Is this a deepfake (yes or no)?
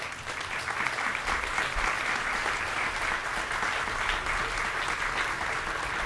no